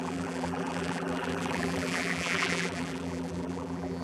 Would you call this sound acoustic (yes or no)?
no